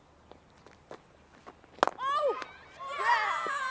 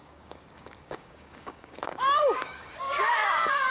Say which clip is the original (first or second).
first